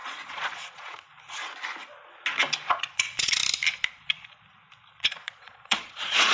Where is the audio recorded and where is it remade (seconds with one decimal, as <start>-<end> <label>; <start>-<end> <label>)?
0.0-1.1 remade; 1.1-2.7 recorded; 2.7-3.4 remade; 3.4-4.9 recorded; 4.9-6.3 remade